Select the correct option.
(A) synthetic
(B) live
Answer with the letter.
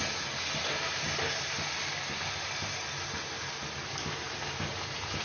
B